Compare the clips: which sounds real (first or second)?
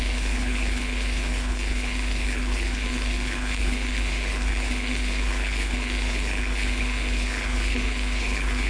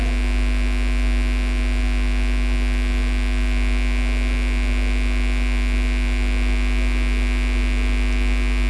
second